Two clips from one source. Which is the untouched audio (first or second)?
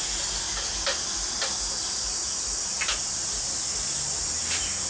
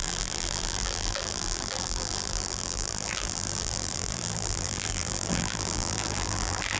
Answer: first